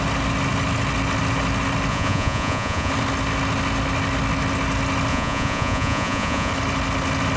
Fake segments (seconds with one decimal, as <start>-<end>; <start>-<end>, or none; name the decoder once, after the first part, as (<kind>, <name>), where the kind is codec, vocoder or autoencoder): 1.9-2.9 (vocoder, Vocos); 5.1-6.5